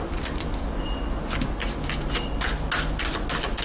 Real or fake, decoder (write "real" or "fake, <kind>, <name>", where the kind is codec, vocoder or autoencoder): real